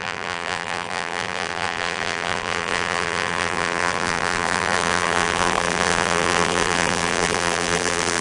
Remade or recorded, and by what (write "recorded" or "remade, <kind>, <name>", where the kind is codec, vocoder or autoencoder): remade, vocoder, BigVGAN v2